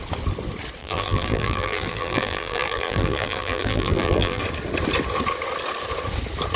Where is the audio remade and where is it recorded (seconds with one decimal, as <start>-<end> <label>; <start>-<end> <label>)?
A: 0.0-0.8 recorded; 0.8-4.4 remade; 4.4-6.6 recorded